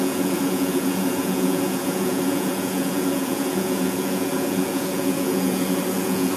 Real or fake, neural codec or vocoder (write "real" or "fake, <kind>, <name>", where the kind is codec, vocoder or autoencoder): fake, vocoder, Vocos